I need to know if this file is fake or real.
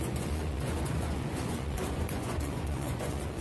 fake